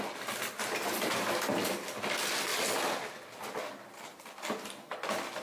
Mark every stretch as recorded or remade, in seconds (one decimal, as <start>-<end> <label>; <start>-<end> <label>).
0.0-5.4 recorded